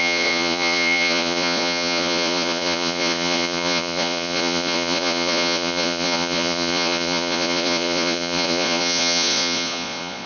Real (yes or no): no